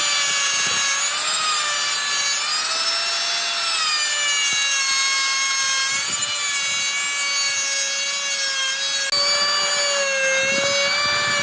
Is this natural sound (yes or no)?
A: yes